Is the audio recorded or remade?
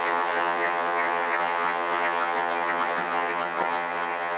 remade